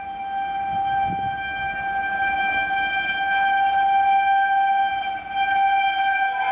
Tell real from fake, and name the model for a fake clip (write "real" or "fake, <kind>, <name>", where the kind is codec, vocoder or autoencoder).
real